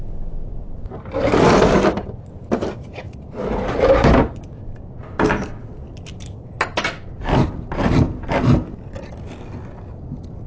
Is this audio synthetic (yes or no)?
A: no